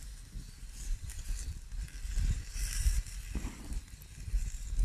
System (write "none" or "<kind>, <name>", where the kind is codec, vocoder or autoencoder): none